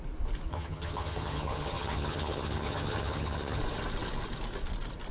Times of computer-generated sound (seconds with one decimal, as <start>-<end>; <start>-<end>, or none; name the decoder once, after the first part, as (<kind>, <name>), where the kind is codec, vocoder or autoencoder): 0.5-3.6 (vocoder, HiFi-GAN)

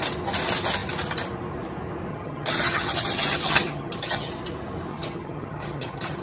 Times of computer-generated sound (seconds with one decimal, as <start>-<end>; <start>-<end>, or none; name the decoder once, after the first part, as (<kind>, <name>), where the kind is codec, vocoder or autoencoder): 2.1-4.3 (vocoder, HiFi-GAN); 4.9-6.2

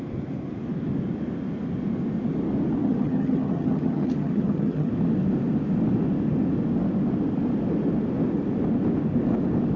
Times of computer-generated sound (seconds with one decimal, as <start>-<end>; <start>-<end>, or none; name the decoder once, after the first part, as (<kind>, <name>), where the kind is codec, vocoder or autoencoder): 2.8-4.9 (vocoder, HiFi-GAN)

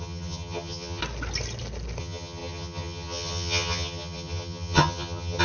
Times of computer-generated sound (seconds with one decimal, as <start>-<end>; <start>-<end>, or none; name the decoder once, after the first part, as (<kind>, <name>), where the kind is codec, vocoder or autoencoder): 0.0-1.0 (vocoder, HiFi-GAN); 2.0-5.4

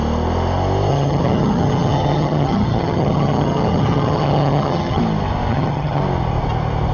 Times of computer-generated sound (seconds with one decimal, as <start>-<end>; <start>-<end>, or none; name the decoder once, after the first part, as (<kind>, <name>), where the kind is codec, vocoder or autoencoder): 0.9-5.0 (vocoder, HiFi-GAN); 5.5-6.0